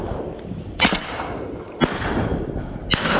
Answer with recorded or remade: recorded